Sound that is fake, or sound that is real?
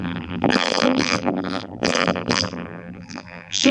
fake